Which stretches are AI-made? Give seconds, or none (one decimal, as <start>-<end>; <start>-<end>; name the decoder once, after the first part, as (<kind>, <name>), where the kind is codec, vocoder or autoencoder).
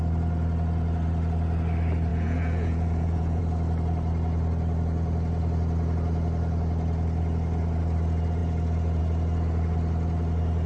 2.1-3.4 (vocoder, Vocos)